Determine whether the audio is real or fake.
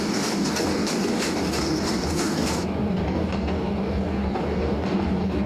fake